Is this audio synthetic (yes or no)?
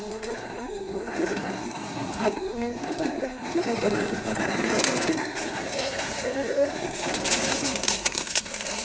yes